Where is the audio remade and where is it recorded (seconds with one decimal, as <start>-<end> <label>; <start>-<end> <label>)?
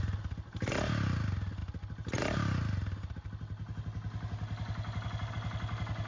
0.0-6.1 recorded